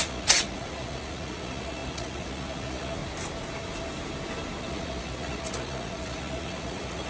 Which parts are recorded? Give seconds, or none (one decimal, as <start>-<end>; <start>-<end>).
3.0-4.6